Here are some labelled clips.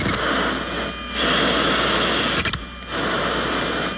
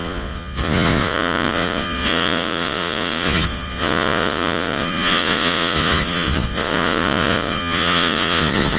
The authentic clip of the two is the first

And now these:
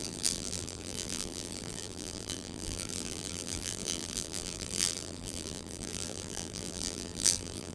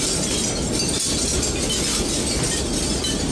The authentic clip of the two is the second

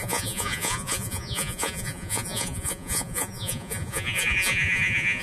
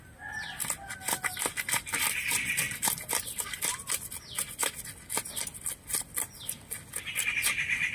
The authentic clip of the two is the second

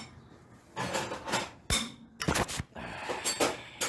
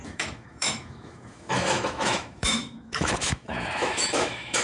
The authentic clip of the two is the first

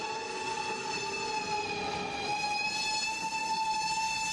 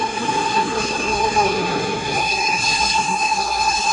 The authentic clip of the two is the first